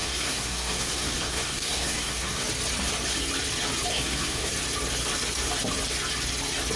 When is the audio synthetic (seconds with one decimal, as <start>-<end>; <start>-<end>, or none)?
0.0-2.4; 3.9-4.5

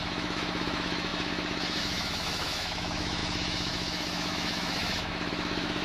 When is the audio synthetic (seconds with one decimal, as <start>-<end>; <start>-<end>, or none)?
0.0-5.8

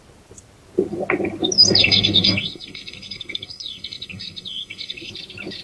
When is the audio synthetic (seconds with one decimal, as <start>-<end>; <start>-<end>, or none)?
1.8-5.1

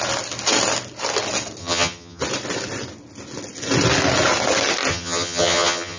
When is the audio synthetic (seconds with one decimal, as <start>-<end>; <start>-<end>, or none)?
1.6-2.2; 4.9-6.0

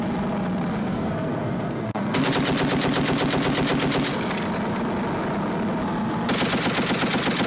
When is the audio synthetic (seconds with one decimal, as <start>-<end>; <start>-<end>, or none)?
0.8-2.3